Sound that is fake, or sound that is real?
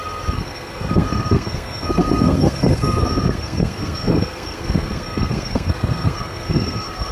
fake